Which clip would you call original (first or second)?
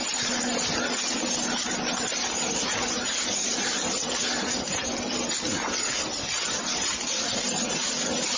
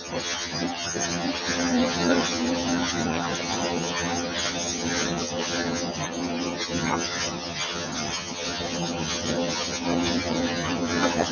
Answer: first